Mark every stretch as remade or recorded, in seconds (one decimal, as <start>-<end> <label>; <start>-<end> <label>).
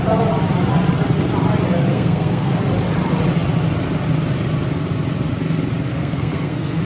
0.0-1.9 recorded; 1.9-2.6 remade; 2.6-5.9 recorded; 5.9-6.8 remade